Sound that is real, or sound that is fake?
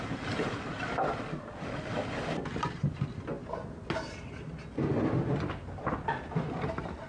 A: real